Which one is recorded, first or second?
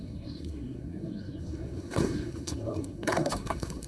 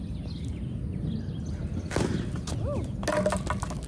second